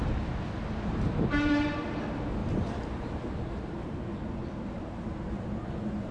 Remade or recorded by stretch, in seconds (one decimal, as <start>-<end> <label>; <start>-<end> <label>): 0.0-2.4 recorded; 2.4-6.1 remade